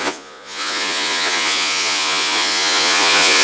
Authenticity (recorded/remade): remade